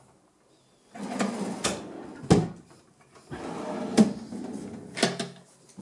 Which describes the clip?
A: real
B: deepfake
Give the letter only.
A